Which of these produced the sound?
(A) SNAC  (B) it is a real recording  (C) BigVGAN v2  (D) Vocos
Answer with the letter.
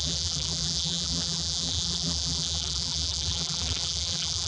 C